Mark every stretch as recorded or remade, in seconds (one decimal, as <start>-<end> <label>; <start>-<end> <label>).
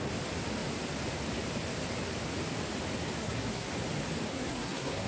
0.0-3.2 recorded; 3.2-3.7 remade; 3.7-4.3 recorded; 4.3-5.1 remade